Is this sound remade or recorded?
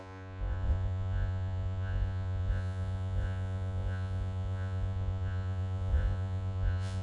remade